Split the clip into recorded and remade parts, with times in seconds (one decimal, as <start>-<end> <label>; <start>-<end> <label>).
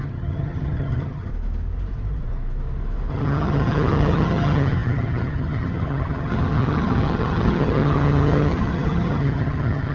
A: 0.0-1.3 remade; 1.3-3.1 recorded; 3.1-9.9 remade